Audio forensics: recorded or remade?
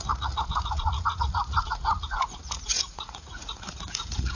remade